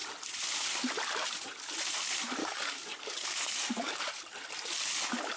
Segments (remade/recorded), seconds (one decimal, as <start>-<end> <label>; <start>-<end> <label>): 0.0-2.4 recorded; 2.4-4.0 remade; 4.0-5.4 recorded